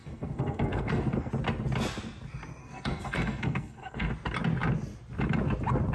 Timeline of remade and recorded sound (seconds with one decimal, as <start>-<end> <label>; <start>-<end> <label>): 0.0-1.3 remade; 1.3-2.6 recorded; 2.6-4.1 remade; 4.1-5.9 recorded